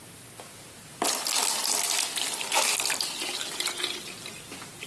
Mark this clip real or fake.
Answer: real